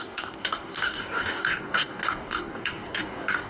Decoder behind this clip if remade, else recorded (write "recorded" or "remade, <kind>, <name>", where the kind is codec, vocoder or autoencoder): remade, codec, DAC